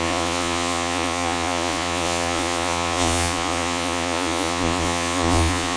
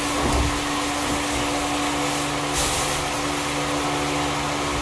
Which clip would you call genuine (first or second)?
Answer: second